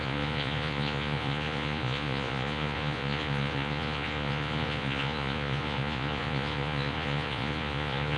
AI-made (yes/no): yes